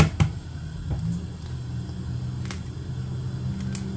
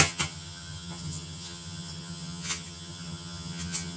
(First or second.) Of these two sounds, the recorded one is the first